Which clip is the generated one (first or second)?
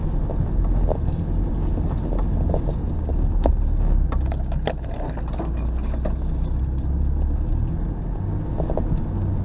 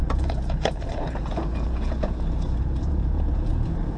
second